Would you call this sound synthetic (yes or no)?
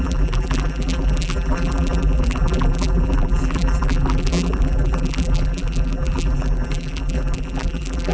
yes